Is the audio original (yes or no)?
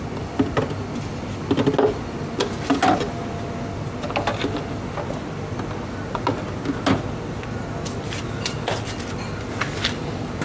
yes